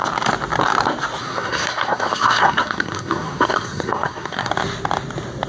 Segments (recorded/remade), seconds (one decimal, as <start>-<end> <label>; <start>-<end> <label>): 0.0-1.2 recorded; 1.2-4.5 remade; 4.5-5.5 recorded